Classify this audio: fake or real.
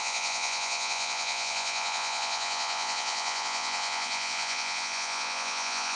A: fake